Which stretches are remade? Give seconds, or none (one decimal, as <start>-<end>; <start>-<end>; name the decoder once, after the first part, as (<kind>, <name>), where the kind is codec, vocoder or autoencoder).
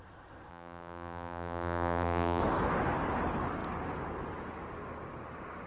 0.5-2.4 (vocoder, BigVGAN v2)